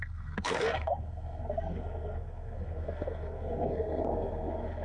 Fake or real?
fake